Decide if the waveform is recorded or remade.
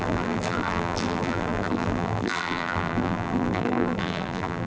remade